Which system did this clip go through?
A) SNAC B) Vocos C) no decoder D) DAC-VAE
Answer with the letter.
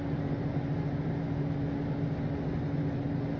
C